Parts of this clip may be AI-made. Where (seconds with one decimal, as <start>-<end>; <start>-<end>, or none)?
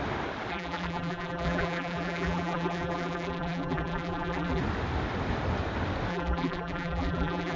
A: 0.5-4.6; 6.1-7.6